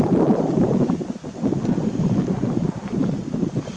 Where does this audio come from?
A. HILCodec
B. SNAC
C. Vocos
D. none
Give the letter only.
D